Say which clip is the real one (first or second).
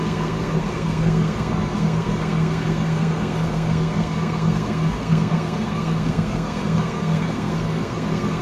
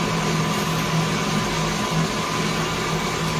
second